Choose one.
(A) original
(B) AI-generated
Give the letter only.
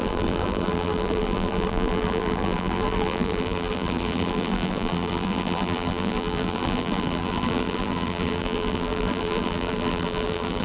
B